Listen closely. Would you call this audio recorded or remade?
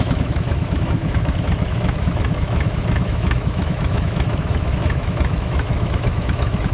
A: remade